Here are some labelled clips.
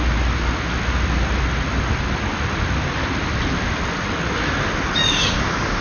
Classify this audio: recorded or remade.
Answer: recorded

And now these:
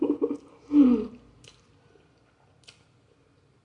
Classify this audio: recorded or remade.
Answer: recorded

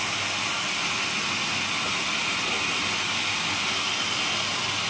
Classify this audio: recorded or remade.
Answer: recorded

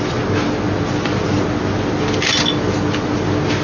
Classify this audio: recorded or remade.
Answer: recorded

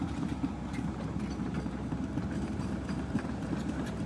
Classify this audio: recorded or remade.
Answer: remade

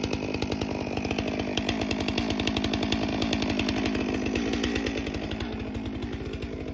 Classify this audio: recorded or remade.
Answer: recorded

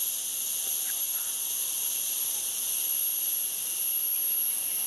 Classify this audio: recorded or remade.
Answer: recorded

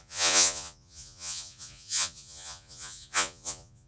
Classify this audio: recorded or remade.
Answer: remade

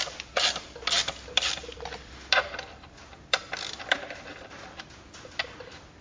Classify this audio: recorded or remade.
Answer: remade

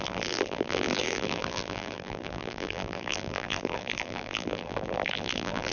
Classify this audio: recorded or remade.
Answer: remade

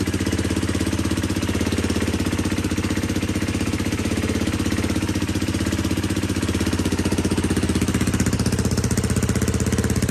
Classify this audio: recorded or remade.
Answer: recorded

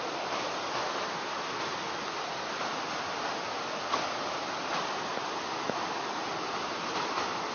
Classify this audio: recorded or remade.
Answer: recorded